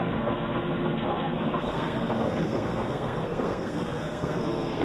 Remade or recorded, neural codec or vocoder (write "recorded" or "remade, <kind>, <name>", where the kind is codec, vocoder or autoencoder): remade, codec, SNAC